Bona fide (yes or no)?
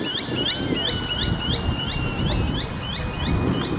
yes